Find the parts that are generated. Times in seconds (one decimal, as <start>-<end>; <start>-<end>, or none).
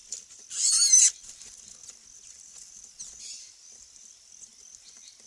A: none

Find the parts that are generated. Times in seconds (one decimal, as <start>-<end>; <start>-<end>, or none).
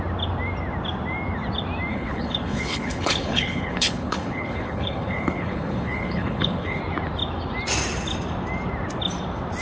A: 1.9-6.8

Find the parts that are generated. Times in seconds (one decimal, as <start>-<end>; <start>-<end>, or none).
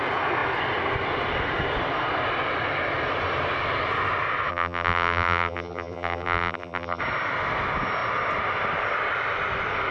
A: 4.5-7.0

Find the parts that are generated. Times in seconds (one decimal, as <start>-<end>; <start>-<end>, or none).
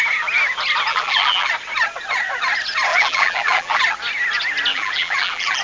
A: 0.9-1.5; 2.9-3.8; 4.7-5.6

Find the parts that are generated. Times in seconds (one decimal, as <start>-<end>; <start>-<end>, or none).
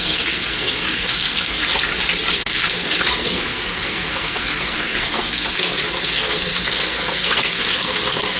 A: 0.0-1.6; 2.3-8.4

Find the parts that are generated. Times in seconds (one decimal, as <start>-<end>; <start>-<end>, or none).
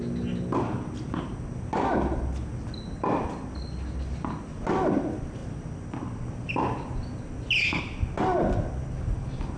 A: none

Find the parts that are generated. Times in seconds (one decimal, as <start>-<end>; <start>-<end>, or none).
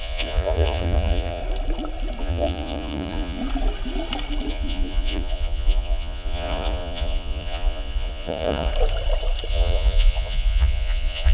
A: 0.0-1.4; 2.2-3.4; 4.5-8.7; 9.5-11.3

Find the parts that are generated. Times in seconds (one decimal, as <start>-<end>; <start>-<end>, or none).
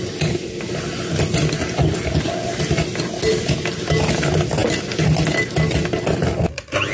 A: none